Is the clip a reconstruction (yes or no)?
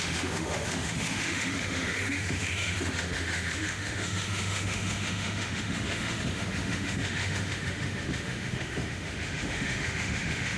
yes